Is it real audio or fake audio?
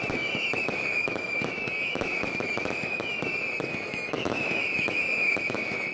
fake